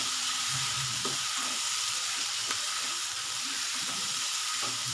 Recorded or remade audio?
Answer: remade